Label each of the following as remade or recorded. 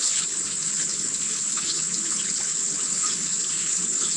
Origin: remade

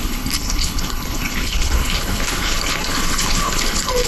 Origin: remade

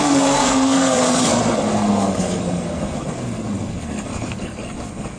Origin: remade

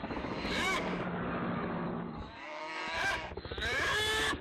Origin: remade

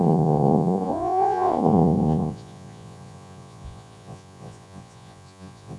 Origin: remade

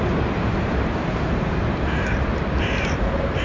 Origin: remade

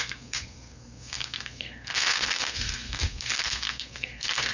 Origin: remade